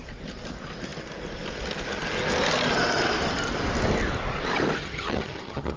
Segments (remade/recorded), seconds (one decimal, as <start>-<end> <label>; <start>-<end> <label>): 0.0-4.8 recorded; 4.8-5.8 remade

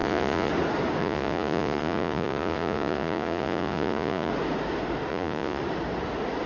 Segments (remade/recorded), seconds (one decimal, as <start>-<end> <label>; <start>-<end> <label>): 0.0-0.5 remade; 0.5-1.0 recorded; 1.0-4.3 remade; 4.3-5.1 recorded; 5.1-5.6 remade; 5.6-6.5 recorded

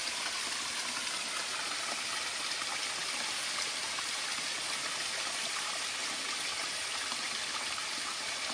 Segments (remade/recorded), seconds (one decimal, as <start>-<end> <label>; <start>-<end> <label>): 0.0-8.5 recorded

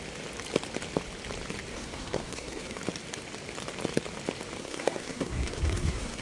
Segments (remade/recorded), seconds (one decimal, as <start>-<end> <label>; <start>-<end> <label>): 0.0-1.7 recorded; 1.7-2.8 remade; 2.8-4.6 recorded; 4.6-6.2 remade

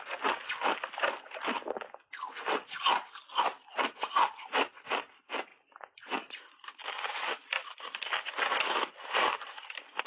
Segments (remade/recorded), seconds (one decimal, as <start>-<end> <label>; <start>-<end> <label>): 0.0-1.6 remade; 1.6-4.7 recorded; 4.7-10.1 remade